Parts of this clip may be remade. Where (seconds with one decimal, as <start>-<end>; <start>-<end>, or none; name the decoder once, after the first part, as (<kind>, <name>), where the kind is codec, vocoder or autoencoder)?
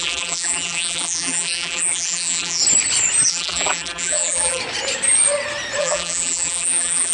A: 0.0-2.6 (vocoder, BigVGAN v2); 3.3-4.6; 5.8-7.1